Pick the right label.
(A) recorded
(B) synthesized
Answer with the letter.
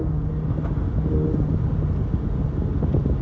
A